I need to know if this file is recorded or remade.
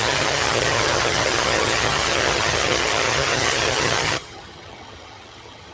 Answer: remade